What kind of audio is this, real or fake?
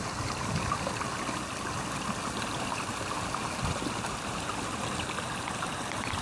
real